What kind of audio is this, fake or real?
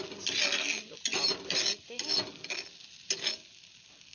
real